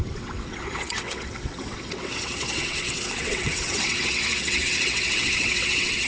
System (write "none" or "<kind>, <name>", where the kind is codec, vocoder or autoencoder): vocoder, WaveNeXt